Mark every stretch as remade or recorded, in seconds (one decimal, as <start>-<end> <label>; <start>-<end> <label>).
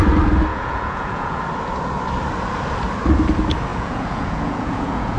0.0-0.5 recorded; 0.5-1.4 remade; 1.4-3.7 recorded; 3.7-5.2 remade